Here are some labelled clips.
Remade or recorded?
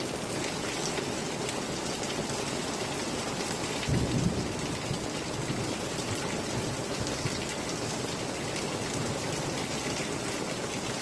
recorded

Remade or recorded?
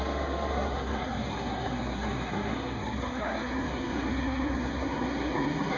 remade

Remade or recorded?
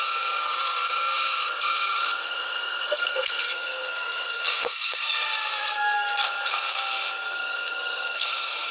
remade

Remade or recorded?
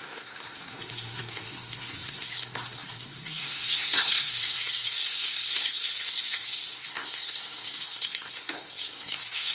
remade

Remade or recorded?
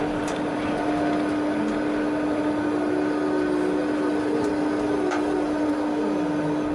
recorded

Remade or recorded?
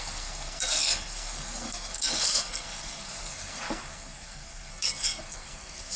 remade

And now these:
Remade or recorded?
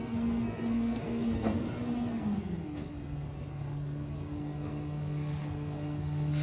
remade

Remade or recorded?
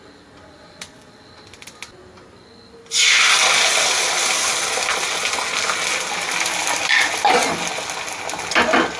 recorded